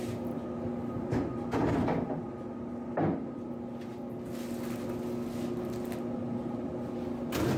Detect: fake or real real